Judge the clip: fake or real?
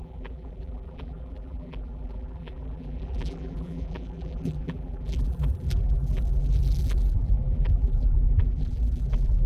fake